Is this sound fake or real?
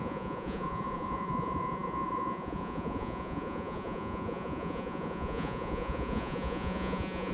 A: fake